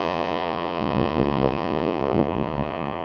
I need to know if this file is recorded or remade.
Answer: remade